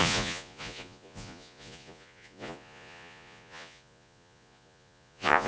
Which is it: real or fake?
fake